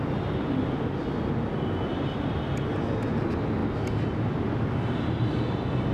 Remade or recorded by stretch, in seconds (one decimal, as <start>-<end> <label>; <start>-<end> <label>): 0.0-1.9 recorded; 1.9-2.5 remade; 2.5-5.9 recorded